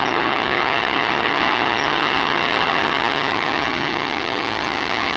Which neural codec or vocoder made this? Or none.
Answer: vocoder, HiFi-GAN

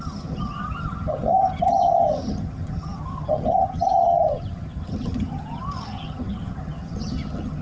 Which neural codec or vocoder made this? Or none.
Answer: vocoder, HiFi-GAN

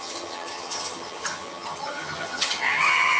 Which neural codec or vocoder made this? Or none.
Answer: vocoder, HiFi-GAN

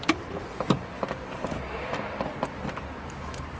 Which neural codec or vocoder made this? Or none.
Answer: none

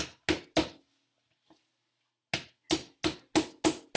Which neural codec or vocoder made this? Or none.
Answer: none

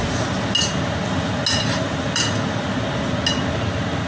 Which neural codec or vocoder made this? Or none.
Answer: none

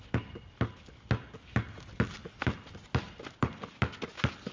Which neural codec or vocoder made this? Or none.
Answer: none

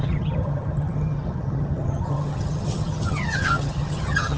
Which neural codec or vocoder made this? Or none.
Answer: vocoder, HiFi-GAN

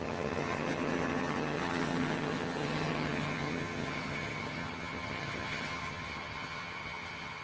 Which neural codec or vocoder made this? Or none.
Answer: vocoder, HiFi-GAN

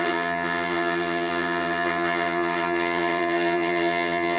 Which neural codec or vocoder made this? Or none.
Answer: vocoder, HiFi-GAN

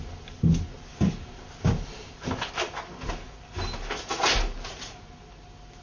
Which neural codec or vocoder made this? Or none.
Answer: none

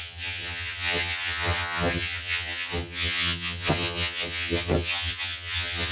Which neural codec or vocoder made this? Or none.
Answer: vocoder, HiFi-GAN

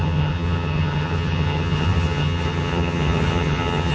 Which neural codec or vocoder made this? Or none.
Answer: vocoder, HiFi-GAN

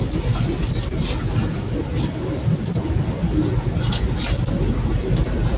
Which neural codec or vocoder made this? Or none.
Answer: none